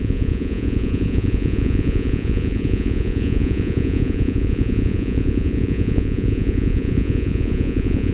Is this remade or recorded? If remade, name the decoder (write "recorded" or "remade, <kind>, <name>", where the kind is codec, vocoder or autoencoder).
remade, vocoder, Vocos